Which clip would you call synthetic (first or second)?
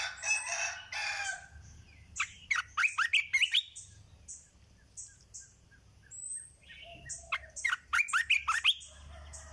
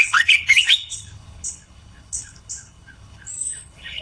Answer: second